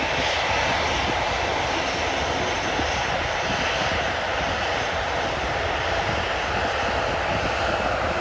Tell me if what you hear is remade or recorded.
recorded